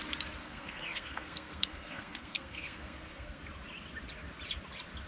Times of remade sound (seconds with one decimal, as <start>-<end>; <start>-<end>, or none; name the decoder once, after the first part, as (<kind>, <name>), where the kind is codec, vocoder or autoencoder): 0.4-3.4 (codec, SNAC)